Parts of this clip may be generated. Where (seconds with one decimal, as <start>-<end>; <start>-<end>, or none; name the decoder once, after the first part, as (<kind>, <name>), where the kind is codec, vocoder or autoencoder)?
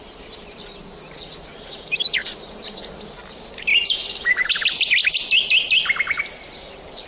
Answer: 1.5-2.8 (vocoder, BigVGAN v2); 3.7-4.5